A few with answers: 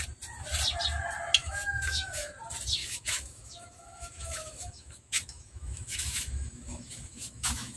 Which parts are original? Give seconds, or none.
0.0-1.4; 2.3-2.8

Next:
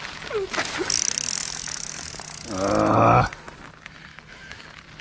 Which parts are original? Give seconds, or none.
0.0-1.4; 2.1-4.1; 4.6-5.0